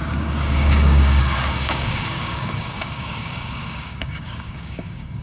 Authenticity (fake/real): fake